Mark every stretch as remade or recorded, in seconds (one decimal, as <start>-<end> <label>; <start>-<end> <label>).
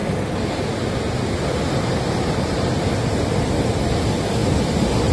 0.0-5.1 recorded